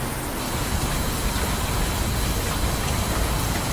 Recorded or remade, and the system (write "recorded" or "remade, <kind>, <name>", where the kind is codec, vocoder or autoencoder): recorded